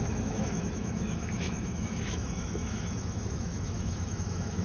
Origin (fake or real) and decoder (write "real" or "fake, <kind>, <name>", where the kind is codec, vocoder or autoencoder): fake, autoencoder, DAC-VAE